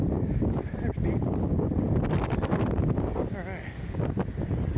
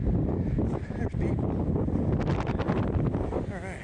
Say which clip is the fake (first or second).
first